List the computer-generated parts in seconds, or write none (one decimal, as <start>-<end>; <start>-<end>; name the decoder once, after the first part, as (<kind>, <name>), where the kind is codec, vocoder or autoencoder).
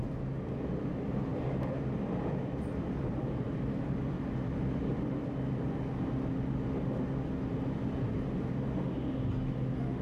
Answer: 1.3-5.0 (vocoder, BigVGAN v2)